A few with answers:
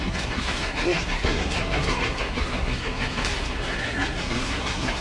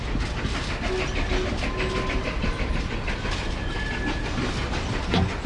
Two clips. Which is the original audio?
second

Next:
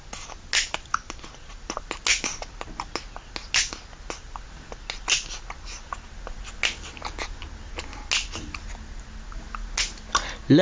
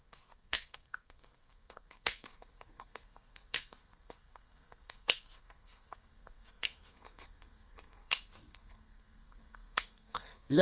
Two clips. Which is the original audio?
first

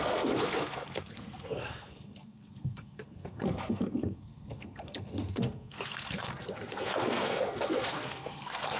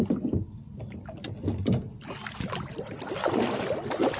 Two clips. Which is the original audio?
second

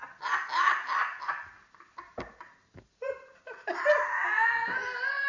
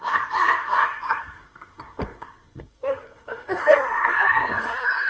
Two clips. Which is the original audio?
first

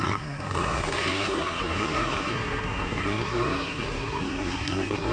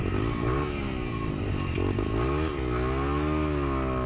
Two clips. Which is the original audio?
second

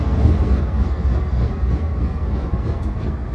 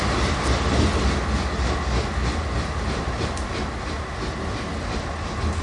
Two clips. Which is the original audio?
second